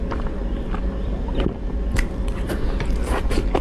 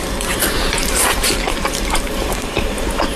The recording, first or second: first